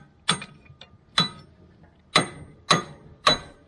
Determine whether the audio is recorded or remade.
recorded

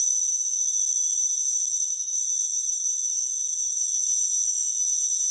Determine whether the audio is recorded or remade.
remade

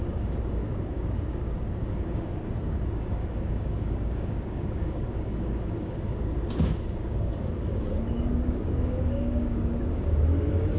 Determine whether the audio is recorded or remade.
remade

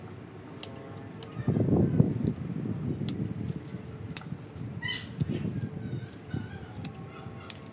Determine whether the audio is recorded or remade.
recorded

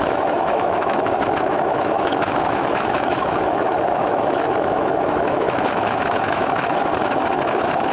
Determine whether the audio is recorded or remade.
remade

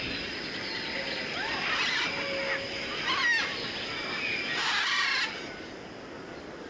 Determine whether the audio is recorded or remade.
recorded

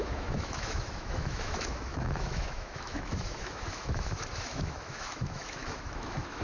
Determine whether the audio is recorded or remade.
remade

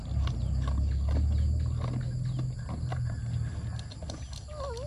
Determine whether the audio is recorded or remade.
recorded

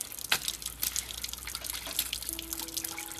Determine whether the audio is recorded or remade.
recorded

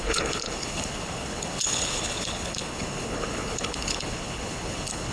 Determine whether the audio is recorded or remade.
remade